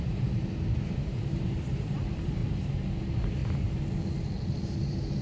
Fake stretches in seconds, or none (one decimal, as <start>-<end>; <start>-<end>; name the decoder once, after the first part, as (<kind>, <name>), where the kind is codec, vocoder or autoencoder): 0.0-2.4 (vocoder, BigVGAN v2); 3.0-3.4; 4.6-5.2